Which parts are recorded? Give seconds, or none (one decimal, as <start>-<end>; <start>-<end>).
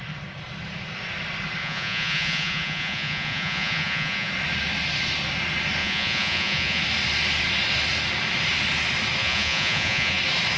0.0-1.6; 4.3-5.8; 6.8-9.2; 10.2-10.6